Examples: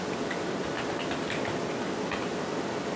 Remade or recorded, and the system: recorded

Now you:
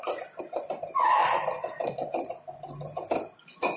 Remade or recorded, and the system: recorded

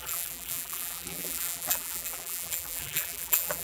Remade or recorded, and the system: remade, vocoder, BigVGAN v2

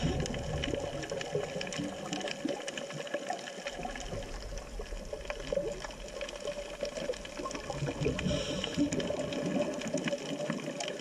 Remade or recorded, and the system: recorded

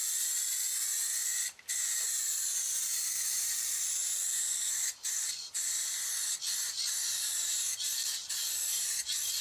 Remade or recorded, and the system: recorded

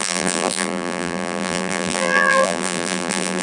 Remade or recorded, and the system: remade, vocoder, BigVGAN v2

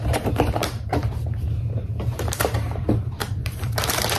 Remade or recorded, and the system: remade, vocoder, BigVGAN v2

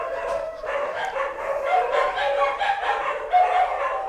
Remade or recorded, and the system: remade, vocoder, BigVGAN v2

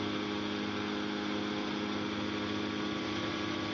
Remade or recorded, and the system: recorded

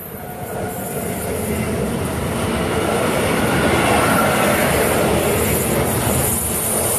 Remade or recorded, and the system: recorded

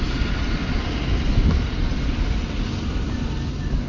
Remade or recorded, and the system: recorded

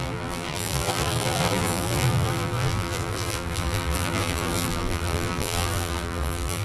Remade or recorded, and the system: remade, vocoder, BigVGAN v2